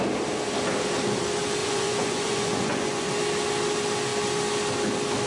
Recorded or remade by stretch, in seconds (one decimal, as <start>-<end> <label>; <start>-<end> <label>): 0.0-1.6 recorded; 1.6-3.1 remade; 3.1-5.3 recorded